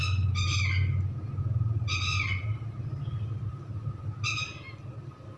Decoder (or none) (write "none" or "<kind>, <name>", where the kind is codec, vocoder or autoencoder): none